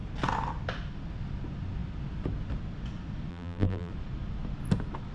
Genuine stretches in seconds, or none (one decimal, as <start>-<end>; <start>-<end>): 0.0-3.3; 3.9-5.1